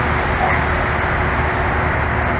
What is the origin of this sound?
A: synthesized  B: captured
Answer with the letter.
B